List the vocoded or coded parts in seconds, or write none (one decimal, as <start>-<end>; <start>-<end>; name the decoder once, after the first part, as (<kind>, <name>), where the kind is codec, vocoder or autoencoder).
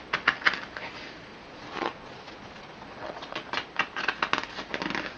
1.3-3.5 (vocoder, Vocos)